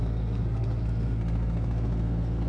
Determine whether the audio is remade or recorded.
remade